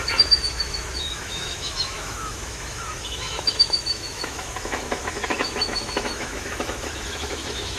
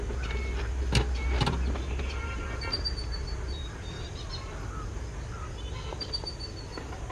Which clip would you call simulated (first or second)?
first